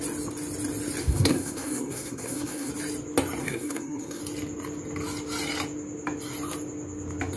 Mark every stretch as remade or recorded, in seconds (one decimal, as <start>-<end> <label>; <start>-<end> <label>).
0.0-1.0 recorded; 1.0-2.7 remade; 2.7-3.4 recorded; 3.4-4.2 remade; 4.2-7.4 recorded